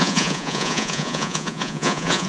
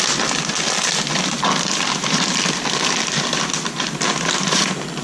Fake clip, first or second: first